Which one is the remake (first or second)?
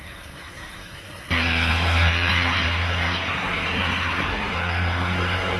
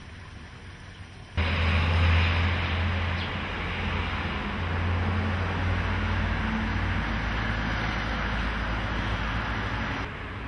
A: first